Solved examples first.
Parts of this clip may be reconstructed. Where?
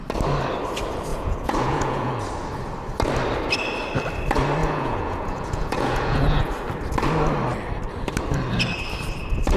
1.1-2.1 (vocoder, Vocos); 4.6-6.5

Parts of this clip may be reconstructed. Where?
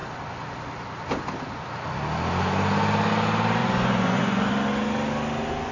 3.6-4.5 (vocoder, Vocos)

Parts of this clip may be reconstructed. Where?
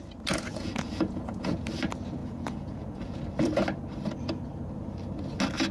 0.5-1.6 (vocoder, Vocos); 2.2-3.2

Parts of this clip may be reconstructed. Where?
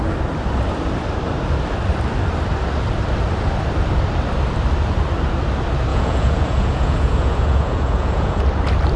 5.9-8.4 (vocoder, Vocos)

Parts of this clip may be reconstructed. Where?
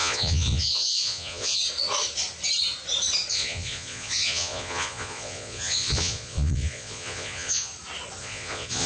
0.0-1.6 (vocoder, Vocos); 3.3-7.7; 8.2-8.9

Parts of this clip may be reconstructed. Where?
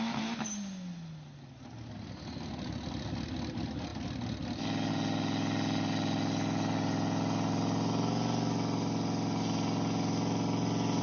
none